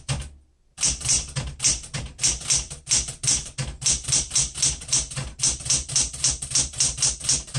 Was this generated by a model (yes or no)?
no